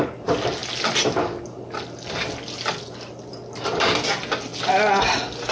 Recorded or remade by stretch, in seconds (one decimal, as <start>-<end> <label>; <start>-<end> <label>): 0.0-5.5 recorded